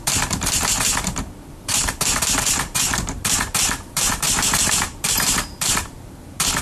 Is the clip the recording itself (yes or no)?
no